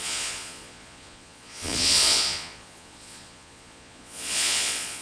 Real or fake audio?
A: fake